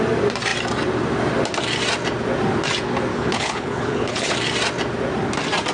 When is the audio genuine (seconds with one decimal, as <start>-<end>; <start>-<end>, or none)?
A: 0.0-3.1; 4.3-5.7